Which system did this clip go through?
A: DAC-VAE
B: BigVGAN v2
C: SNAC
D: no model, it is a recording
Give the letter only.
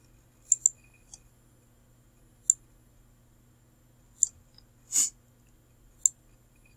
D